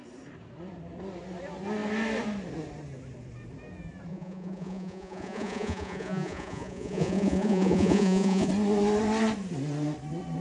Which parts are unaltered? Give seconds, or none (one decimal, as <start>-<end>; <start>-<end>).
0.0-4.1; 8.5-10.4